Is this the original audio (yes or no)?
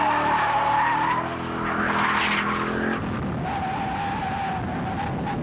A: yes